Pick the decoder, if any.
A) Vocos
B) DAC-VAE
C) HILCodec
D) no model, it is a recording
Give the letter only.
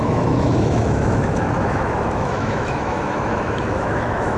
B